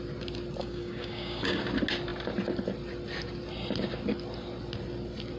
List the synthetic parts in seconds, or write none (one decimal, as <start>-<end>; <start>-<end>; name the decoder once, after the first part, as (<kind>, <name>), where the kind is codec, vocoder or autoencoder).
0.6-1.6 (codec, DAC)